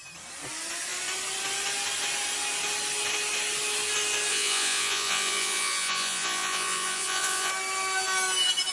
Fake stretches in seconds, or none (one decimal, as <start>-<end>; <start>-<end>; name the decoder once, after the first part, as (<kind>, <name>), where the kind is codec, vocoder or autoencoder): 4.3-7.5 (vocoder, Vocos)